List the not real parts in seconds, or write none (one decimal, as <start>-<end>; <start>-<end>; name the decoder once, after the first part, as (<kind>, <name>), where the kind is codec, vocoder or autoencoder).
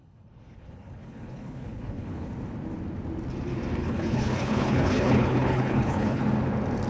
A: 0.0-2.3 (codec, HILCodec); 3.8-6.2